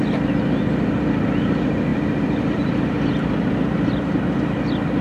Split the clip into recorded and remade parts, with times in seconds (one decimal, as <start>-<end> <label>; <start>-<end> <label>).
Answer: 0.0-5.0 recorded